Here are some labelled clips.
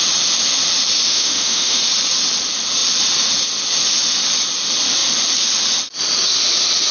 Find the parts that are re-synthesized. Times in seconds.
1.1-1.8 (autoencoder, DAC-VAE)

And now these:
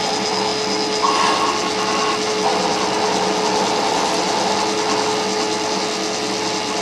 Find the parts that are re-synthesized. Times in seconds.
none

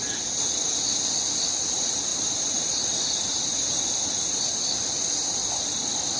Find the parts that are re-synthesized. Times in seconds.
2.1-4.6 (vocoder, BigVGAN v2)

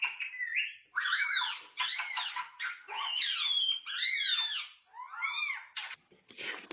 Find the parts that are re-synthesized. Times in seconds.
none

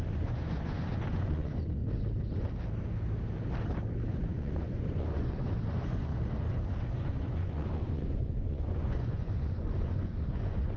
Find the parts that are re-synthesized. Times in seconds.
0.0-1.8 (vocoder, Vocos); 4.1-6.1; 6.9-10.8

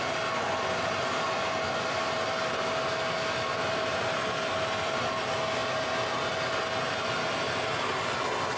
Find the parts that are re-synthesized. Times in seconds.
3.5-4.0 (vocoder, BigVGAN v2); 5.6-6.3

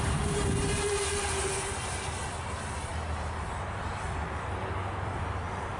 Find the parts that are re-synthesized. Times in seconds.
none

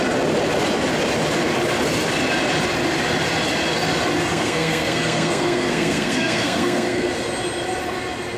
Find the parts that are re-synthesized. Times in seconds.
4.3-7.1 (codec, SNAC)